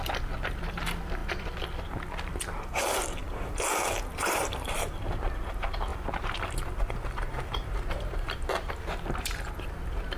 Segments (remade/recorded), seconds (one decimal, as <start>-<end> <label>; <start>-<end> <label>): 0.0-4.1 recorded; 4.1-4.9 remade; 4.9-5.9 recorded; 5.9-9.5 remade; 9.5-10.2 recorded